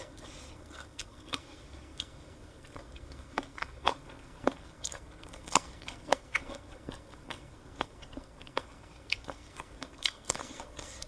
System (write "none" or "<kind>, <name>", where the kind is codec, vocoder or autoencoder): codec, SNAC